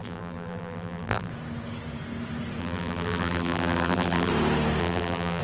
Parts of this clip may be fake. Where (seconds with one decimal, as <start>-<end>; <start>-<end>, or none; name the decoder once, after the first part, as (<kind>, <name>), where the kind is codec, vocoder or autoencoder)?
0.0-1.3 (vocoder, BigVGAN v2); 2.6-4.3; 4.8-5.4